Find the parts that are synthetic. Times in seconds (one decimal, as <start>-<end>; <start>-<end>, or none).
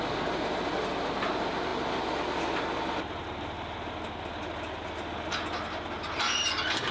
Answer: none